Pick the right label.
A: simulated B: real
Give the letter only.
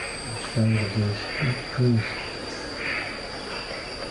B